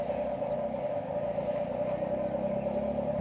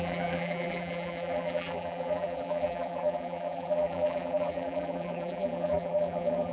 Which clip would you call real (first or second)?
first